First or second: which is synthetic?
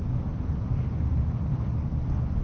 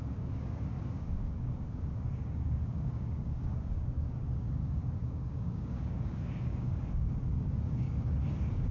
second